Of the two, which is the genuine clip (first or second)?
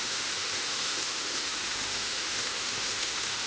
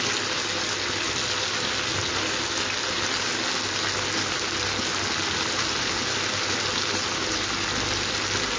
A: second